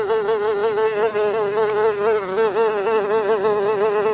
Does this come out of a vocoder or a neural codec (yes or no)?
no